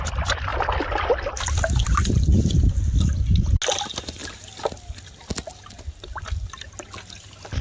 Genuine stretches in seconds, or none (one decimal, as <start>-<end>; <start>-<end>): 0.0-7.6